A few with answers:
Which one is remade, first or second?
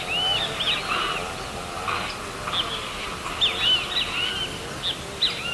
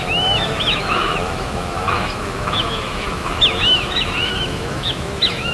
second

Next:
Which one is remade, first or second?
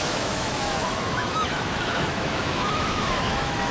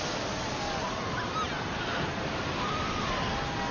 first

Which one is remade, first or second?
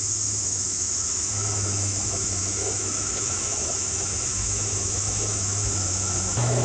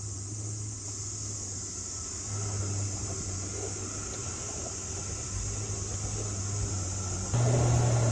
first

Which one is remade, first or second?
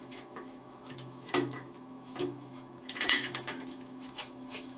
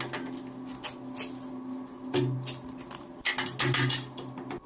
first